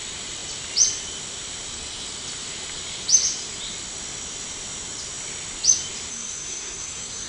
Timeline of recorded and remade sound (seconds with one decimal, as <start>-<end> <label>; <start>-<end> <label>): 0.0-6.1 recorded; 6.1-7.3 remade